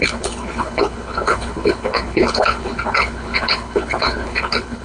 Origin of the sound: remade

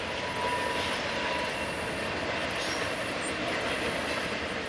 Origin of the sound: recorded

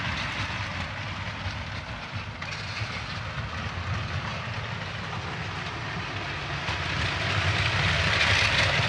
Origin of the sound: recorded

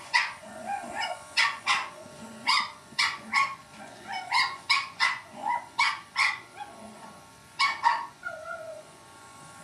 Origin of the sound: remade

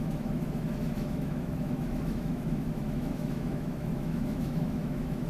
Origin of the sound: remade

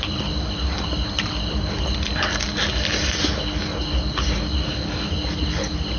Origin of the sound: recorded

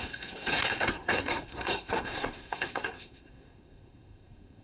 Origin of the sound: remade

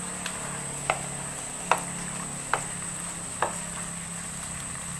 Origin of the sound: recorded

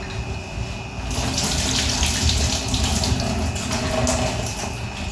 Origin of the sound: recorded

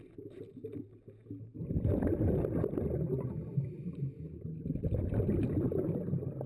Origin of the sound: recorded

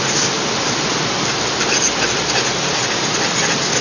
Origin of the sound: recorded